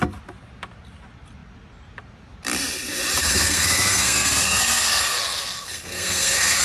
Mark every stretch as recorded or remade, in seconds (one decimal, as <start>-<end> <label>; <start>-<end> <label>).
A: 0.0-3.2 recorded; 3.2-6.6 remade